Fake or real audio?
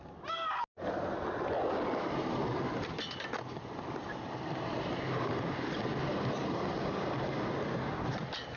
real